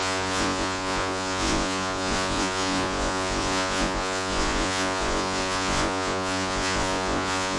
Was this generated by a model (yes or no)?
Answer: yes